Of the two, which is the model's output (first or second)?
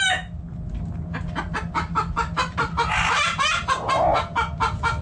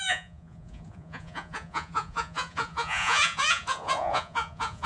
second